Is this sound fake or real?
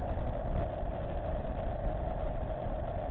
real